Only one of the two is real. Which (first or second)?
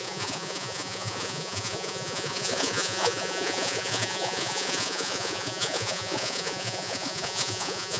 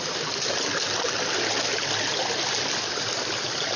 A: second